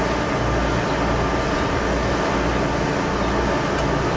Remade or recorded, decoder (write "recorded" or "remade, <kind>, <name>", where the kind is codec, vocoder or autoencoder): recorded